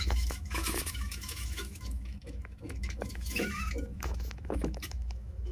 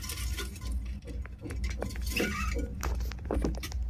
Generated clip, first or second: first